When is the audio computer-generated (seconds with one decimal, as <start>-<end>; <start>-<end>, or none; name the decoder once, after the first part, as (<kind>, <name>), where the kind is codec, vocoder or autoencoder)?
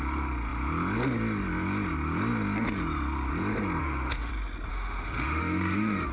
3.8-4.3 (autoencoder, DAC-VAE); 4.7-6.1